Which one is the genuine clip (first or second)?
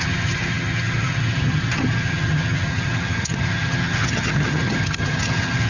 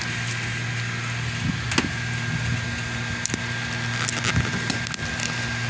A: second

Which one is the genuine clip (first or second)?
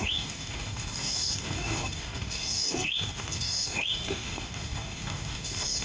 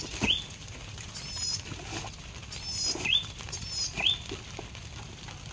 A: second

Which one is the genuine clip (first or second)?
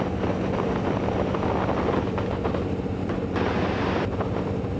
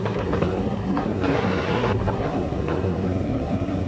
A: first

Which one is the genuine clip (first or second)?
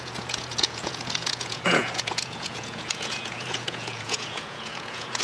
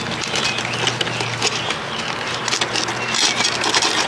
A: second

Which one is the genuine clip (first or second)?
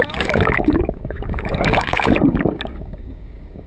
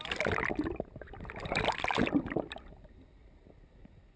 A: second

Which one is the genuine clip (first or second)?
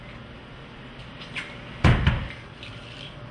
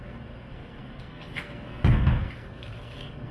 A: first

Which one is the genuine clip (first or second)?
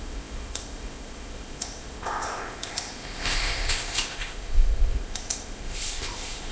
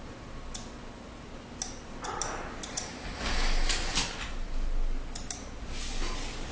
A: second